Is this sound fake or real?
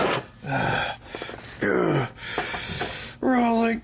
real